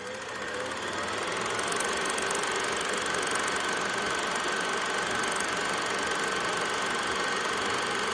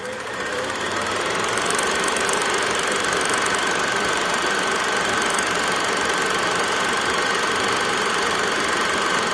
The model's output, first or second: second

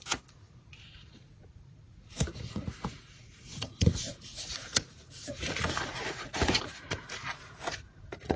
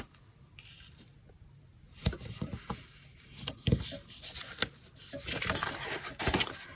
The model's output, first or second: first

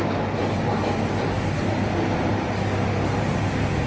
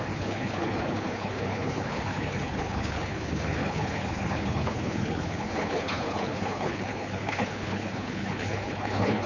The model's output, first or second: second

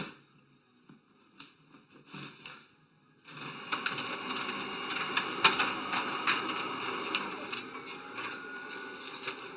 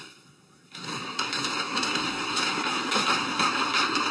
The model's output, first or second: second